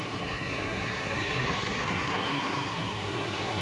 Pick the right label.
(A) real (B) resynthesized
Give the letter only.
B